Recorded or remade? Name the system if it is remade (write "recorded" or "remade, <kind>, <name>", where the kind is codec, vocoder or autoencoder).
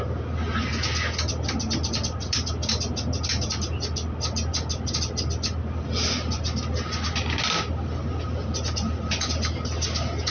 recorded